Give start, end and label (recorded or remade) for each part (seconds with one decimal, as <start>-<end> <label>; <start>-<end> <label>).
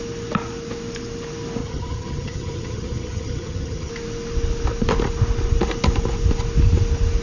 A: 0.0-1.6 recorded; 1.6-3.9 remade; 3.9-7.2 recorded